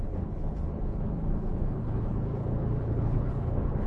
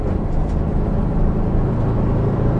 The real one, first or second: second